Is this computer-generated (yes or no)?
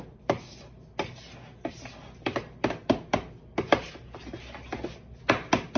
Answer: no